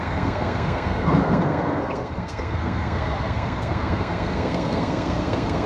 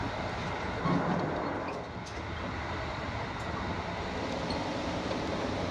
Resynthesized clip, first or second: first